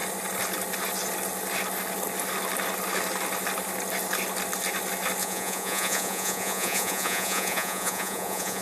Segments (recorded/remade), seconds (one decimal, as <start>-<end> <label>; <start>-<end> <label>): 0.0-5.2 recorded; 5.2-8.6 remade